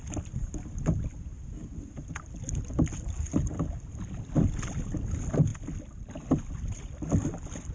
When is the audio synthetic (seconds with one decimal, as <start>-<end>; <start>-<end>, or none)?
none